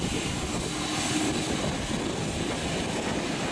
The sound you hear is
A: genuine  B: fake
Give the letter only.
A